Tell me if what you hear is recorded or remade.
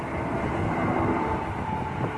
recorded